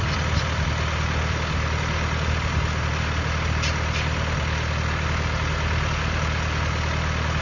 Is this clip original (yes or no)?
yes